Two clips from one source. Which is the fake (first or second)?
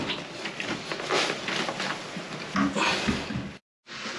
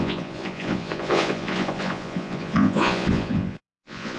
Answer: second